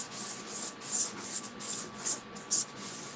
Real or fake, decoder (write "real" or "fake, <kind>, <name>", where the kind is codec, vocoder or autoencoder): fake, vocoder, Vocos